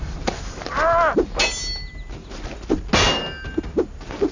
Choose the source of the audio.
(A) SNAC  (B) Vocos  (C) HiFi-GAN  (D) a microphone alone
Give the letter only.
D